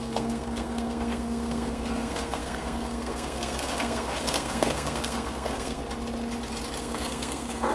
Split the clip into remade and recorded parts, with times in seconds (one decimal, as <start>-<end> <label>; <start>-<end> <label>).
0.0-5.8 remade; 5.8-6.8 recorded; 6.8-7.7 remade

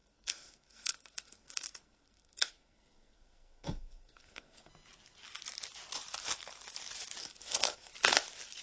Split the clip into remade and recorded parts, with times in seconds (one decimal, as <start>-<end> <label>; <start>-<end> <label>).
0.0-4.7 remade; 4.7-7.2 recorded; 7.2-7.9 remade; 7.9-8.6 recorded